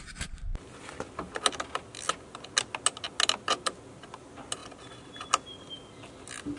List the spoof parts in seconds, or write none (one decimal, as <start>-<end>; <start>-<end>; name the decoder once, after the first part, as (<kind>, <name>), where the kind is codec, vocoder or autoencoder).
none

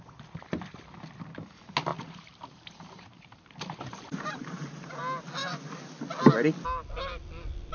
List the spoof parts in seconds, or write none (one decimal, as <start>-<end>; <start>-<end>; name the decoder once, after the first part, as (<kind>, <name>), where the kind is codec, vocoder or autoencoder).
1.9-4.9 (vocoder, BigVGAN v2); 5.4-6.0

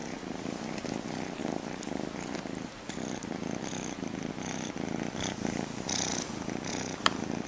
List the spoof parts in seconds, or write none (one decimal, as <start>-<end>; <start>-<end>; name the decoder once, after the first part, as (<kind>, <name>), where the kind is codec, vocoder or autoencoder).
none

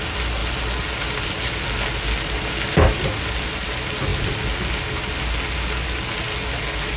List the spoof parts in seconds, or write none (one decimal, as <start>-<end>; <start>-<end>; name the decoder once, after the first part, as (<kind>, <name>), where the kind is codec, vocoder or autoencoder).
none

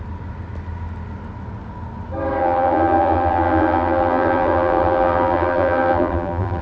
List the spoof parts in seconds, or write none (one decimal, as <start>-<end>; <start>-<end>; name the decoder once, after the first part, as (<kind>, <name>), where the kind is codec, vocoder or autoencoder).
2.4-6.6 (vocoder, BigVGAN v2)

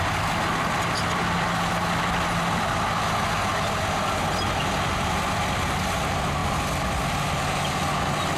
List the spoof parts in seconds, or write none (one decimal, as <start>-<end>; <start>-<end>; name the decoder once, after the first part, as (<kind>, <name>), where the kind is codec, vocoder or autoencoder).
6.4-7.4 (vocoder, BigVGAN v2)